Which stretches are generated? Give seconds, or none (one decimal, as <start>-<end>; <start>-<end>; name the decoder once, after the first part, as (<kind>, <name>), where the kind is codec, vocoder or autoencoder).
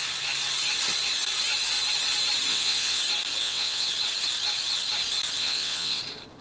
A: 2.5-3.0 (vocoder, WaveNeXt); 3.4-3.9; 5.4-6.0